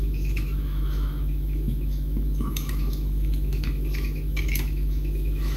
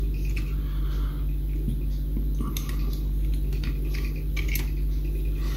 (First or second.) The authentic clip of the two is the second